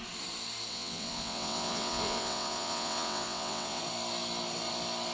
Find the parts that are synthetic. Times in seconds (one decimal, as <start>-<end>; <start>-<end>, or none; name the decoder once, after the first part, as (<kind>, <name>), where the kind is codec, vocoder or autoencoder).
0.7-3.8 (vocoder, WaveNeXt)